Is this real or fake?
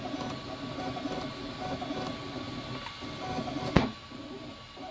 real